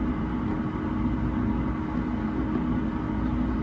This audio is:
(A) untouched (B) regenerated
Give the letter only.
A